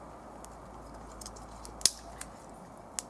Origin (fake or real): real